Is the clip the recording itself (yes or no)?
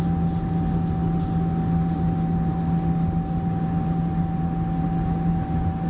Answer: yes